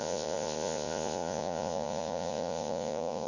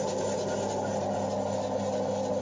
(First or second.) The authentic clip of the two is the second